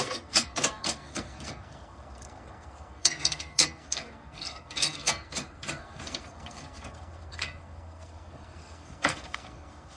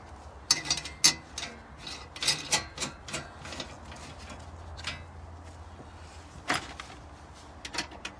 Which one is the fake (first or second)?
first